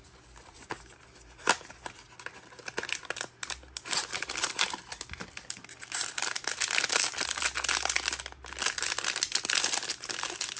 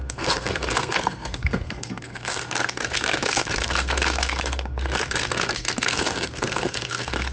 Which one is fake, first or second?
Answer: second